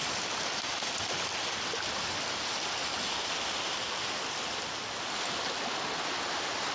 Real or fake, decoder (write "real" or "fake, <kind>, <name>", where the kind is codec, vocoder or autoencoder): real